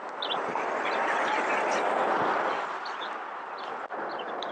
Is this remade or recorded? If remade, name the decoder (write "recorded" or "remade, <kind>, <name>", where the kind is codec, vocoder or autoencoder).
recorded